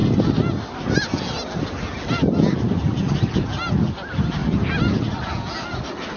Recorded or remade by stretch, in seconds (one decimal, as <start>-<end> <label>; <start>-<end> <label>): 0.0-6.2 recorded